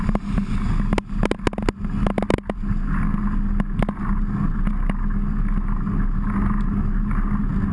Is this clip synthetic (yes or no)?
no